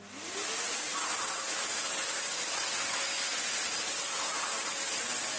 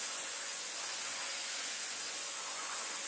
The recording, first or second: first